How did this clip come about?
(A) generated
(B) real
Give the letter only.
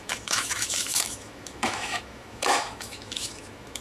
A